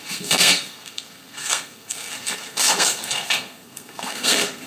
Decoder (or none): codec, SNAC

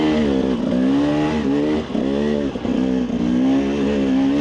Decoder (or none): none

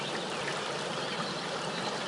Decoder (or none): none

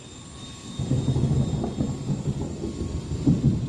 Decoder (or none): none